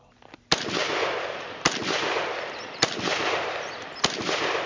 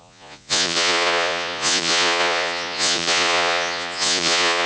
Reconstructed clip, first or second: second